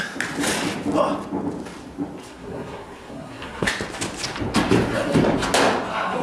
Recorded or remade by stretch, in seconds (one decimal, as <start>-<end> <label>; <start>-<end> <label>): 0.0-2.2 recorded; 2.2-3.7 remade; 3.7-6.2 recorded